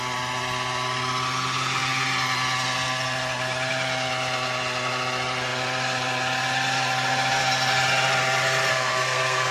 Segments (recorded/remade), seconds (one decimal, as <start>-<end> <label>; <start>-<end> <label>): 0.0-8.7 recorded; 8.7-9.5 remade